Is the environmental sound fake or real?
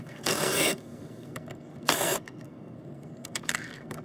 fake